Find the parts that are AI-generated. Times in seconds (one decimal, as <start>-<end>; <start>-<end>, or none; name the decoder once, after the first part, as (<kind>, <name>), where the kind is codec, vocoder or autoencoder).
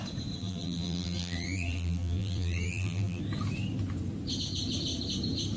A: 0.4-3.2 (vocoder, BigVGAN v2)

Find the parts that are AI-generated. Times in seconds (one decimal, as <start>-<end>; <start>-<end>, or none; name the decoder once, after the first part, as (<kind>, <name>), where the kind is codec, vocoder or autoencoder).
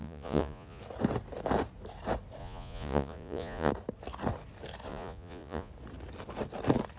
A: 0.0-0.8 (vocoder, Vocos); 2.4-3.7; 4.9-5.7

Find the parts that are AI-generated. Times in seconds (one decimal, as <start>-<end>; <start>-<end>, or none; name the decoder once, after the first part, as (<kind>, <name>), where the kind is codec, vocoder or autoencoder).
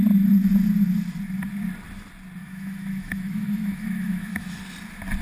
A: 2.4-4.6 (autoencoder, DAC-VAE)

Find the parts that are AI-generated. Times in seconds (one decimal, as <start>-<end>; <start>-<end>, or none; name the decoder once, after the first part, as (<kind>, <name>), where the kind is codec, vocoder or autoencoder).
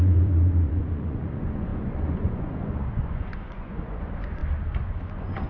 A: 0.0-4.4 (vocoder, Vocos); 5.0-5.5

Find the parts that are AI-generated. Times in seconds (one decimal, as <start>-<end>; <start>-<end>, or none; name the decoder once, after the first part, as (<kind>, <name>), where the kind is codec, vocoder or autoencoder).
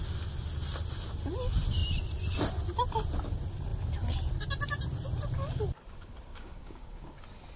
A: 6.3-7.1 (codec, DAC)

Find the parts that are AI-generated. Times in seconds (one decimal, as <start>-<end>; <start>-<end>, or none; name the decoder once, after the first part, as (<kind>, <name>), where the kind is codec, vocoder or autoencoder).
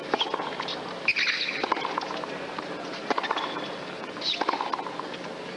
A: none